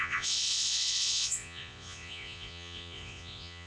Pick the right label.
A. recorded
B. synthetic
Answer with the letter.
B